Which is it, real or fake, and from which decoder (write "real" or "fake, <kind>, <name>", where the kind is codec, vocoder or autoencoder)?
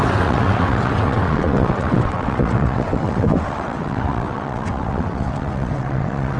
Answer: fake, vocoder, WaveNeXt